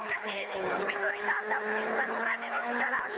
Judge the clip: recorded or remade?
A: remade